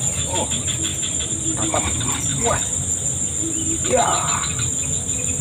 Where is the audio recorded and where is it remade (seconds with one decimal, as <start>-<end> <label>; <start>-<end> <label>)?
0.0-0.9 recorded; 0.9-1.8 remade; 1.8-5.4 recorded